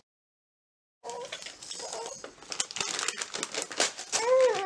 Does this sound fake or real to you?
real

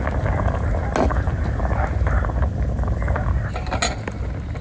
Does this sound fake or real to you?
real